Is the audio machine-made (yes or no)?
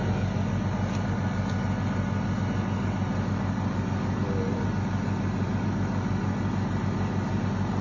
no